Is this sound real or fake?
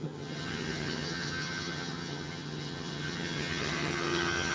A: fake